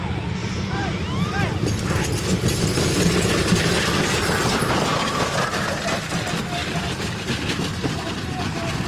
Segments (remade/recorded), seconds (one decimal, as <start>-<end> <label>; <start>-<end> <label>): 0.0-0.4 recorded; 0.4-5.4 remade; 5.4-6.6 recorded; 6.6-7.7 remade; 7.7-8.9 recorded